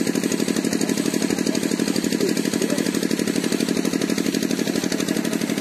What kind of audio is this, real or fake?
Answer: real